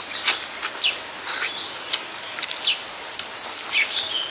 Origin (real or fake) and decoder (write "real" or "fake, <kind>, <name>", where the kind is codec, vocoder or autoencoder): real